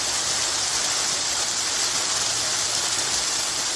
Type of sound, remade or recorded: remade